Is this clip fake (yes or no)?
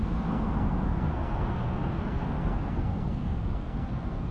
yes